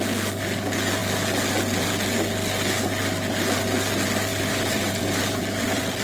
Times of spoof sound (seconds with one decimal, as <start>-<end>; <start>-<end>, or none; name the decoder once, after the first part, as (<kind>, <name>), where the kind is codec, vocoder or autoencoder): 4.3-6.0 (vocoder, BigVGAN v2)